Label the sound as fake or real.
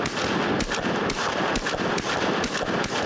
real